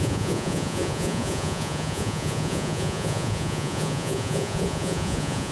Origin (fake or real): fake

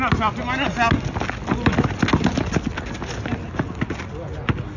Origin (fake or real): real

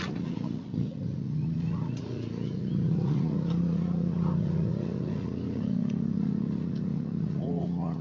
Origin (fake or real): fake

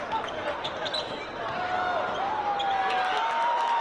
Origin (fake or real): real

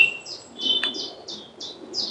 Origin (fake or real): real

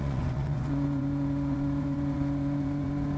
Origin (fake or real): fake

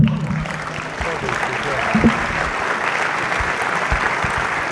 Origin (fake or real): real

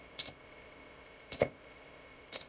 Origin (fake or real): fake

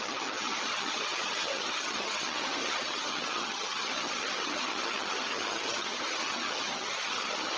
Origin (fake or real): fake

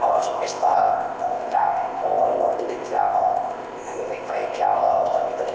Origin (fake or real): fake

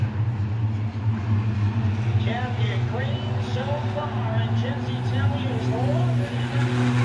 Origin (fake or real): real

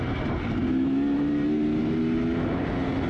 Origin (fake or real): real